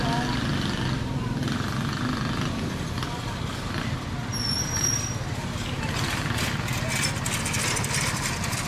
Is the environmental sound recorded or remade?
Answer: recorded